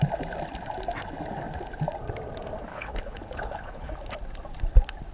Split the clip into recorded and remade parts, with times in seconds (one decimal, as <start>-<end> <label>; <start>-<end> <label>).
0.0-2.7 recorded; 2.7-3.9 remade; 3.9-5.1 recorded